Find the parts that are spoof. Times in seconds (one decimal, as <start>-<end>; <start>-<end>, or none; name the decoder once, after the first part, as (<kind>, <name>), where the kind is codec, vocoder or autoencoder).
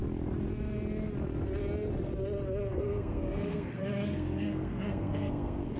2.7-5.8 (codec, SNAC)